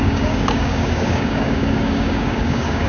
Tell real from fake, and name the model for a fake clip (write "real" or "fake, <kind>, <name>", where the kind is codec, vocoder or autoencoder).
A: fake, codec, DAC